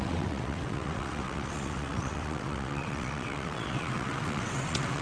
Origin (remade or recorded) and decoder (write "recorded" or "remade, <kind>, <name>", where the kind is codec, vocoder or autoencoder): remade, vocoder, WaveNeXt